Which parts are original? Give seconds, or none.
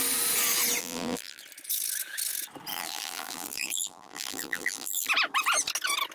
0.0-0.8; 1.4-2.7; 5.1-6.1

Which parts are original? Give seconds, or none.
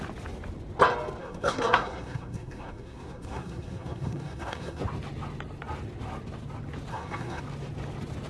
0.0-1.2; 4.8-6.9; 7.4-8.3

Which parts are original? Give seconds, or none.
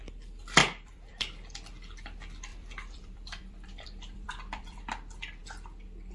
0.0-0.6; 1.2-2.5; 4.8-6.1